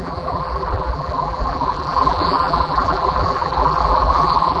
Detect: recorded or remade remade